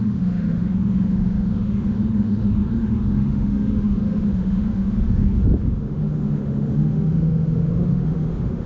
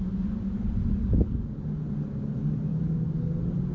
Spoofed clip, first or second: first